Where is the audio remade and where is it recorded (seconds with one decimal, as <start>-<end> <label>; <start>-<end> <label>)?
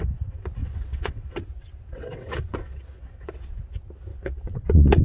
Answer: 0.0-0.6 recorded; 0.6-3.6 remade; 3.6-4.1 recorded; 4.1-5.0 remade